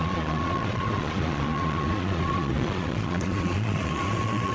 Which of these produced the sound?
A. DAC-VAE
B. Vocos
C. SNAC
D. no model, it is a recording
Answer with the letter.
B